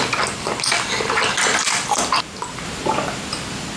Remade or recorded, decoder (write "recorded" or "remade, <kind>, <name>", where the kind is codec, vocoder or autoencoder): recorded